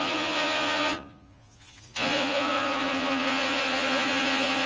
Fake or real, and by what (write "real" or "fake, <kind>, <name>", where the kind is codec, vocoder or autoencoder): fake, vocoder, Vocos